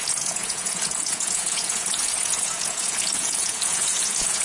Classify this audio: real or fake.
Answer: fake